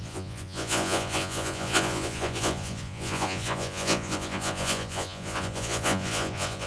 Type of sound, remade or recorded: remade